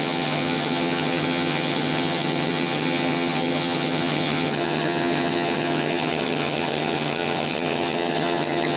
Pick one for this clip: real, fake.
fake